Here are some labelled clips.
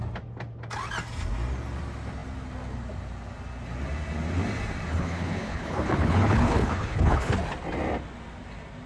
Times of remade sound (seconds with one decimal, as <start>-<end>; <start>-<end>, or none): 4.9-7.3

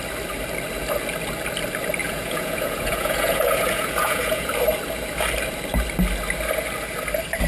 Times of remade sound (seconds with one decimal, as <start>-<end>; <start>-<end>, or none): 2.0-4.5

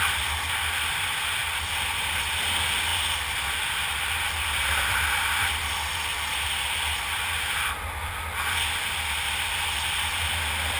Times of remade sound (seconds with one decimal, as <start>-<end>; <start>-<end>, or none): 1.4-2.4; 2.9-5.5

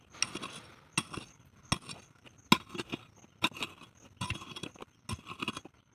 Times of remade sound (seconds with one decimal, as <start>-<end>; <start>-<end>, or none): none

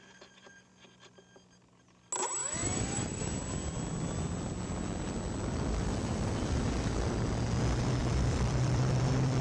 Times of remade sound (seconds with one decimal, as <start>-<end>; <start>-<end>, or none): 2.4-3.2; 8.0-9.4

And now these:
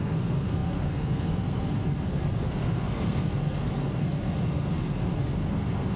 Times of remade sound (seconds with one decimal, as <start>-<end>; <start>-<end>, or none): 0.0-6.0

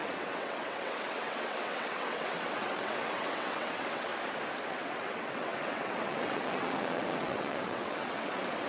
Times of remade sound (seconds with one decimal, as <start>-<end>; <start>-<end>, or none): 0.0-4.1; 4.6-8.7